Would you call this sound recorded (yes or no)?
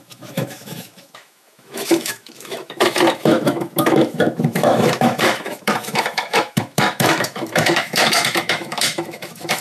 no